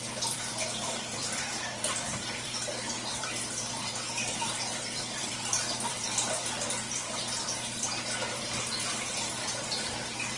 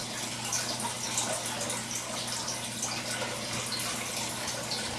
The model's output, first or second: first